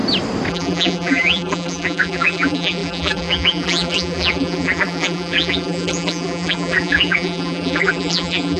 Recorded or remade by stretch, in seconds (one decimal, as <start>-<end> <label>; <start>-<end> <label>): 0.0-0.5 recorded; 0.5-8.6 remade